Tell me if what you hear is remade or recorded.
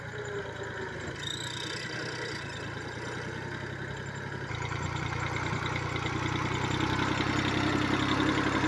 recorded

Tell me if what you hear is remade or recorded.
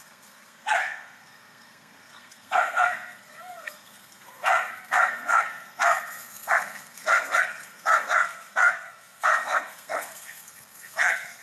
remade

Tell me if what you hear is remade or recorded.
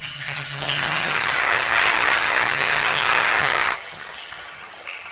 remade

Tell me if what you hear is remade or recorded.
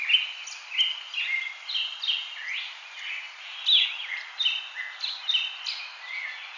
recorded